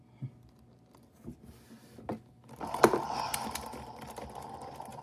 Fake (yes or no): no